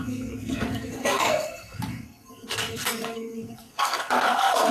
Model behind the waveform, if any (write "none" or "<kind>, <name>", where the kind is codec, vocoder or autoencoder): codec, SNAC